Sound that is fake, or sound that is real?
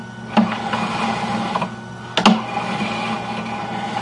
real